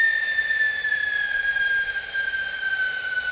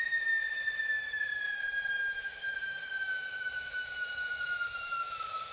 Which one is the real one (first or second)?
first